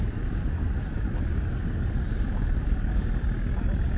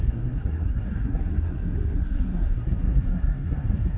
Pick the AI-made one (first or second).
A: second